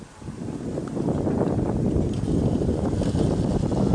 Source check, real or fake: real